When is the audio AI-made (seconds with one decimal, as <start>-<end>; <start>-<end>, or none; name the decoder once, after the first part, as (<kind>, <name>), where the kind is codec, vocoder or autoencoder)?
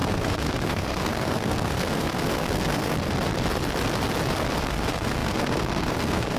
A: 0.0-2.9 (codec, SNAC); 4.6-6.4